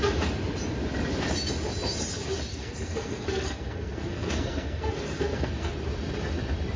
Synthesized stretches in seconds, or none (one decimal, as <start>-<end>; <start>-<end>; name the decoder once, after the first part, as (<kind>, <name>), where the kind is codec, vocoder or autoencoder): 2.5-5.7 (codec, SNAC)